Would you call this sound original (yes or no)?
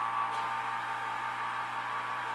yes